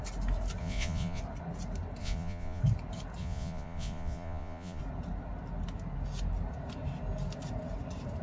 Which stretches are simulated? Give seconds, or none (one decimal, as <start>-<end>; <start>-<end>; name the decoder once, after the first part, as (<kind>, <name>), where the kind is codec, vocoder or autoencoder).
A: 0.6-1.2 (vocoder, Vocos); 2.0-2.6; 3.2-4.8